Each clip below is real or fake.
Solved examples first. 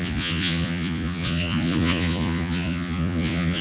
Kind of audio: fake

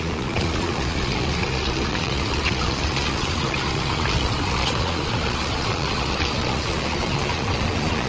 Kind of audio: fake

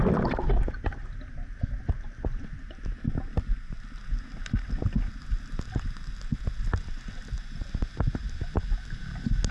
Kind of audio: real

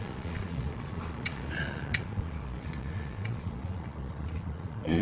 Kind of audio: fake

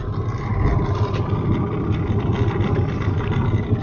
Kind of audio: real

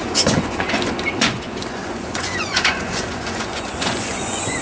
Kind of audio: fake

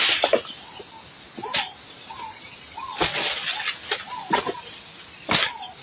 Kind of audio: real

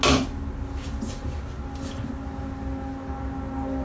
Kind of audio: real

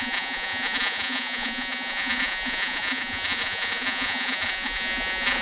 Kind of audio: fake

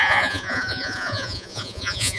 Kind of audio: fake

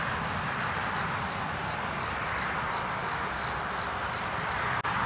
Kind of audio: real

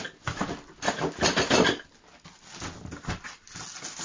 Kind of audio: real